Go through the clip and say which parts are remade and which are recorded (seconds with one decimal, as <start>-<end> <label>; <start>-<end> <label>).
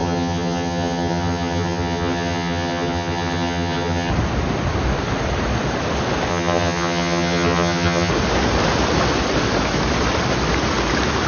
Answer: 0.0-4.1 remade; 4.1-6.3 recorded; 6.3-8.1 remade; 8.1-11.3 recorded